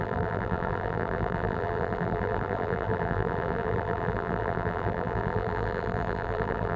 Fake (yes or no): yes